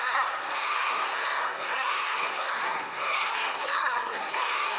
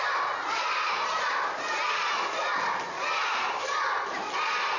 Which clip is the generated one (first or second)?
first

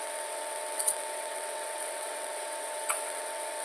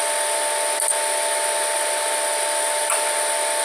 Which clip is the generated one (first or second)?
first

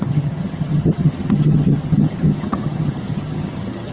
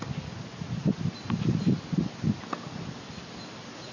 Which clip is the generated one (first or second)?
first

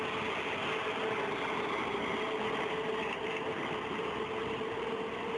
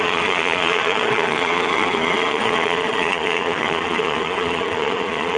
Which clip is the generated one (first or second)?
second